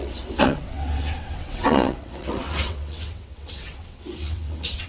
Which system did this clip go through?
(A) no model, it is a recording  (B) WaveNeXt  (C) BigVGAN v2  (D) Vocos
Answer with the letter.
B